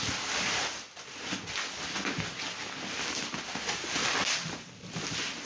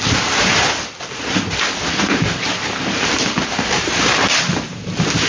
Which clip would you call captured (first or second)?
first